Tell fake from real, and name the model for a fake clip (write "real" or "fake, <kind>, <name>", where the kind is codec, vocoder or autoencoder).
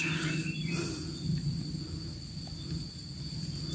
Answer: real